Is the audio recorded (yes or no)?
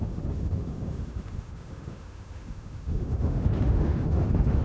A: no